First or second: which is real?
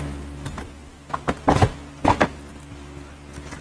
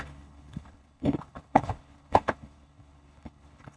first